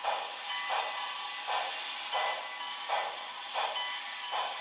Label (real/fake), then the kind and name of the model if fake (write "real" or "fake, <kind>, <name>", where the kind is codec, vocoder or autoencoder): real